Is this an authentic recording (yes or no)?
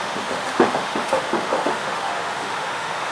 no